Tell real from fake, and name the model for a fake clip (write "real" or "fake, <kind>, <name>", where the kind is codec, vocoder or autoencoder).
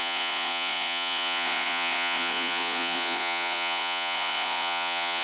fake, vocoder, Vocos